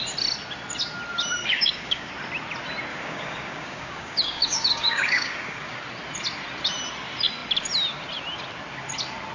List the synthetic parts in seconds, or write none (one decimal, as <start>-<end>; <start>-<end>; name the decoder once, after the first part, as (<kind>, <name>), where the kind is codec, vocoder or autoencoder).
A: 1.4-2.1 (codec, DAC); 2.9-5.8